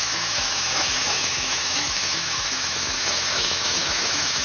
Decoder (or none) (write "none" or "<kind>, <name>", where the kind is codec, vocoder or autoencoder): autoencoder, DAC-VAE